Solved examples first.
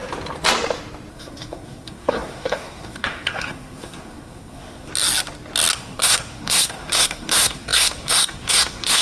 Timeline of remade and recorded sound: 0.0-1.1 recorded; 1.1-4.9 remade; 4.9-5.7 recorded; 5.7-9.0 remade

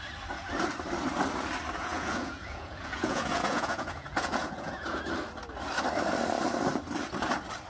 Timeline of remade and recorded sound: 0.0-1.9 recorded; 1.9-5.0 remade; 5.0-7.7 recorded

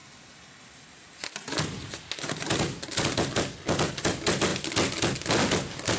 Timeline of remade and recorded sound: 0.0-6.0 recorded

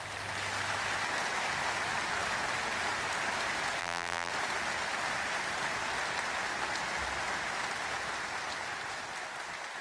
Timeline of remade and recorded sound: 0.0-3.8 recorded; 3.8-4.3 remade; 4.3-9.8 recorded